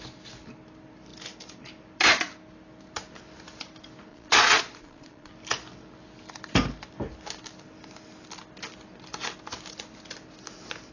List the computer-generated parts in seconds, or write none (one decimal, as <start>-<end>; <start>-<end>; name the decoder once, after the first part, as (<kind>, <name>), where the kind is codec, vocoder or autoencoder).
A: 4.1-5.3 (vocoder, Vocos)